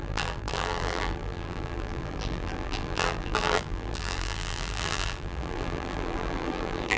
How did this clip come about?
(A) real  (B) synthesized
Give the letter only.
B